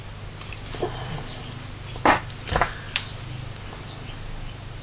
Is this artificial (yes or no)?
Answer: no